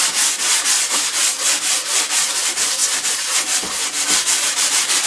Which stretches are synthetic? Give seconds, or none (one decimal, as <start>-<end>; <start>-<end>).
1.7-2.8; 4.5-5.1